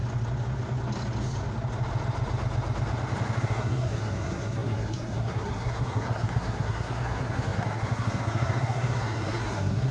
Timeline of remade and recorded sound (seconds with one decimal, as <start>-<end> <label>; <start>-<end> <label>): 0.0-3.4 recorded; 3.4-9.9 remade